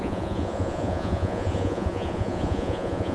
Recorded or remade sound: remade